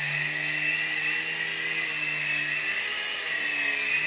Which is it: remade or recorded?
recorded